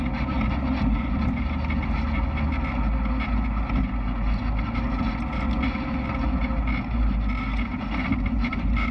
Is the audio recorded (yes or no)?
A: yes